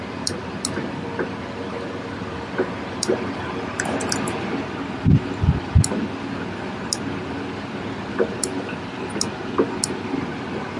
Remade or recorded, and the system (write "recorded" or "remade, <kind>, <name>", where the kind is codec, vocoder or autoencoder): recorded